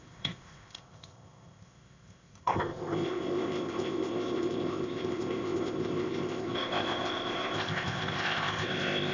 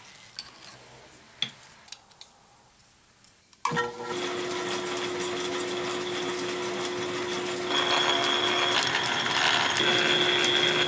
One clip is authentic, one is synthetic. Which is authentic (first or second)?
second